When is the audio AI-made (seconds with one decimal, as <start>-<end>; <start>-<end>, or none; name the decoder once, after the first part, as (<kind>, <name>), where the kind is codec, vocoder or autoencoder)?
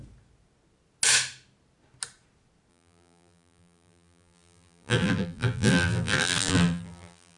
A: 2.7-7.4 (vocoder, BigVGAN v2)